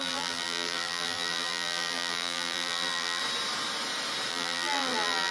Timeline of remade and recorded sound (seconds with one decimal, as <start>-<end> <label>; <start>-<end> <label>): 0.0-3.2 remade; 3.2-4.3 recorded; 4.3-5.3 remade